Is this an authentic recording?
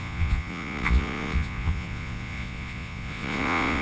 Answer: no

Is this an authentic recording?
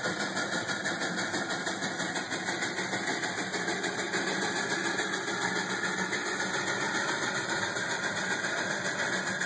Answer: yes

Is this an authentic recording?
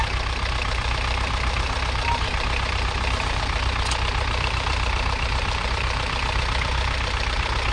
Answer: no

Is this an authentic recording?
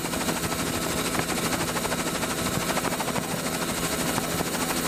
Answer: yes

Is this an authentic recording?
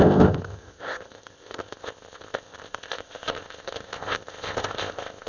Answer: no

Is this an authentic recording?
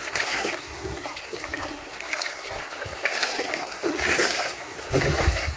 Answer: no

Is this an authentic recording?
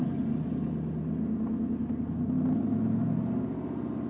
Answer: yes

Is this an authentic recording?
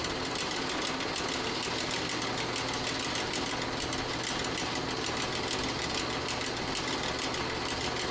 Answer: yes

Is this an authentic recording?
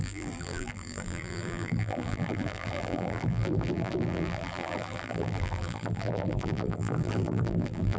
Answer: no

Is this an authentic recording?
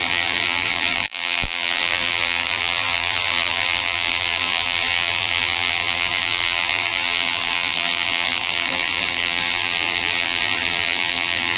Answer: no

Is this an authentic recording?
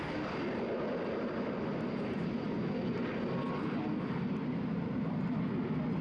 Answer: yes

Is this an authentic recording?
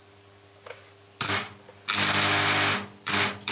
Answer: no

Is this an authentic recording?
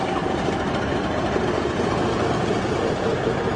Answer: no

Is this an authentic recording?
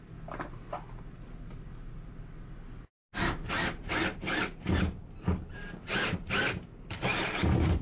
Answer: yes